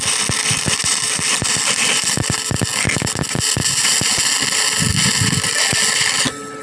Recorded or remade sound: recorded